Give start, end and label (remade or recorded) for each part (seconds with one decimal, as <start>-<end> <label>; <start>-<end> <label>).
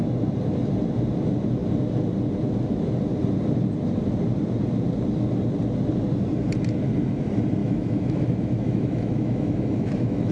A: 0.0-7.6 recorded; 7.6-10.3 remade